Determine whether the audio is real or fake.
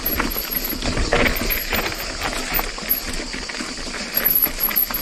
real